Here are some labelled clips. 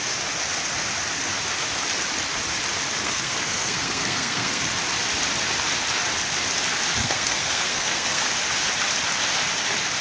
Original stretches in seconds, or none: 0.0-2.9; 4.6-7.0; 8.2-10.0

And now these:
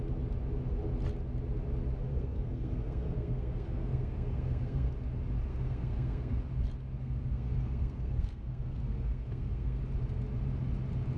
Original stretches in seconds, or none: 0.0-2.1; 4.9-5.5; 6.4-7.0; 9.8-11.2

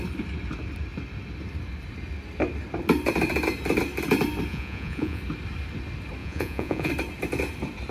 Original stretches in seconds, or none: 0.0-4.5; 5.2-6.2; 6.9-7.9

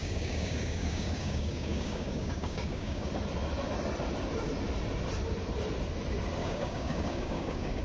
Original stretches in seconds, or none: 3.1-6.4

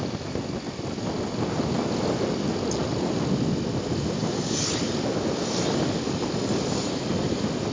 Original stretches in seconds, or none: 0.0-7.7

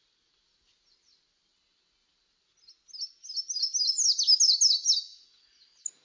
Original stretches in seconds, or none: 0.0-6.0